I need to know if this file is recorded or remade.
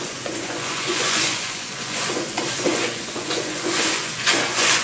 remade